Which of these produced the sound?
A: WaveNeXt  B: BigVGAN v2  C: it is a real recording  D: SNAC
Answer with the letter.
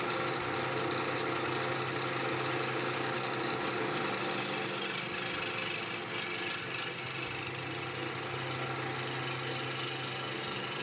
C